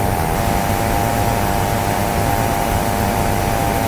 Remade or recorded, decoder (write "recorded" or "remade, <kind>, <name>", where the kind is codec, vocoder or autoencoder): recorded